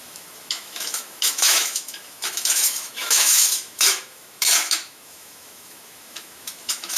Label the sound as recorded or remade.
remade